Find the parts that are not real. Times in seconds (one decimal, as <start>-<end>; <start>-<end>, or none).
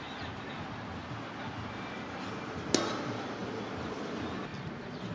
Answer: none